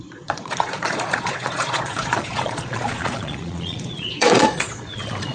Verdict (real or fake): fake